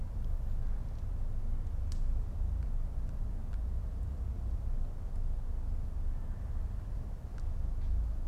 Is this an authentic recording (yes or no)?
yes